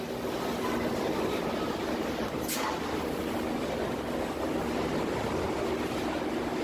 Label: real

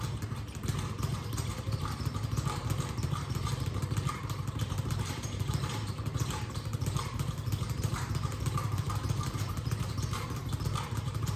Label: fake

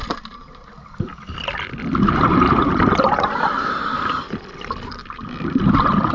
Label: fake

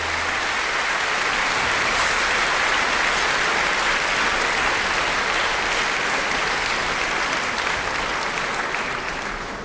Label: real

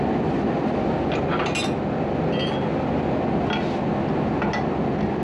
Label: real